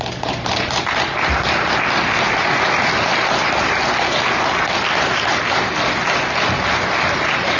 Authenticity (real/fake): real